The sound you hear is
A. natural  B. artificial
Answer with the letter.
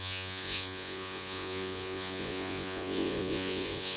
B